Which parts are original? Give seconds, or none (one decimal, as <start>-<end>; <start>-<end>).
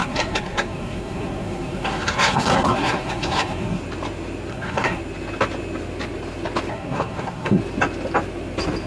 3.8-4.5; 5.0-6.7; 7.6-8.9